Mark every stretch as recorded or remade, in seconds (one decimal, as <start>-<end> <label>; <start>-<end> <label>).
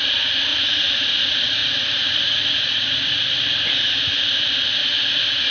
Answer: 0.0-0.5 recorded; 0.5-1.0 remade; 1.0-1.6 recorded; 1.6-3.4 remade; 3.4-5.5 recorded